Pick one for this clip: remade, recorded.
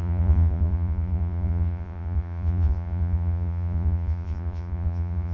remade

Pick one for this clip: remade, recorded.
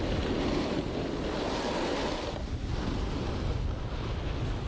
recorded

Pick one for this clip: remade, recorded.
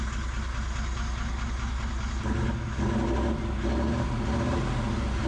recorded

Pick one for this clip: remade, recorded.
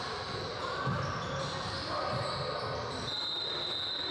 recorded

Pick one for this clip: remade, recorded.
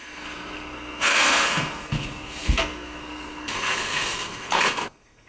remade